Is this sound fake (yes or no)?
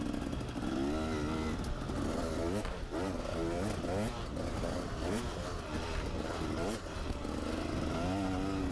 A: no